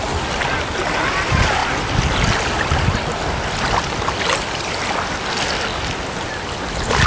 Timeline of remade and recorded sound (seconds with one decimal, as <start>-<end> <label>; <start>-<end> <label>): 0.0-7.1 recorded